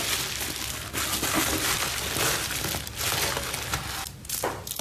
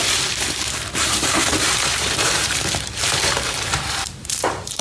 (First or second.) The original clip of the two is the first